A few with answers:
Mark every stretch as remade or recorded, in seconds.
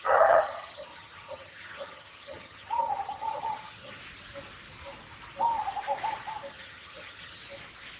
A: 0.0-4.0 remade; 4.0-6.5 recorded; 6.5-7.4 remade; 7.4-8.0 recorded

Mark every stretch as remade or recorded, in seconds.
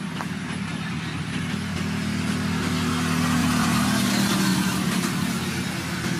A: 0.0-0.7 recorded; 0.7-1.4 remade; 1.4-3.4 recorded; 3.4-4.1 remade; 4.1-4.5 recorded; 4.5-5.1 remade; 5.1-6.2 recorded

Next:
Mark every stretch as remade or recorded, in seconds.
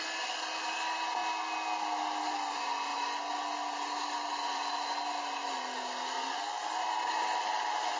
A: 0.0-8.0 recorded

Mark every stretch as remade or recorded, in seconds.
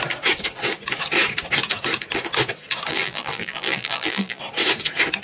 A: 0.0-2.9 recorded; 2.9-4.4 remade; 4.4-5.2 recorded